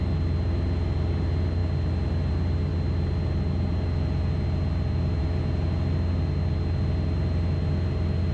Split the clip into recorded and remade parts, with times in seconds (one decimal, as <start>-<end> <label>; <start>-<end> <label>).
0.0-8.3 recorded